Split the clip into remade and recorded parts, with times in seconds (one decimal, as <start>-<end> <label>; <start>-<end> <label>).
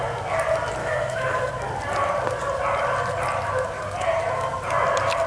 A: 0.0-0.8 recorded; 0.8-1.5 remade; 1.5-5.3 recorded